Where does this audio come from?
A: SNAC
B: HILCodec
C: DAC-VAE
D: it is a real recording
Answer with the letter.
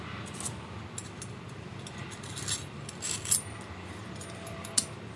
D